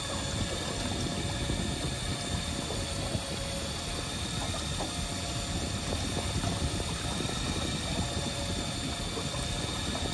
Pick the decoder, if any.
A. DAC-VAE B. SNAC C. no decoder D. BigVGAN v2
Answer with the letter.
C